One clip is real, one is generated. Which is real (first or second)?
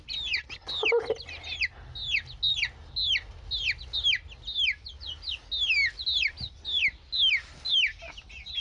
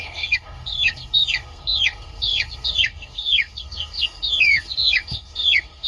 first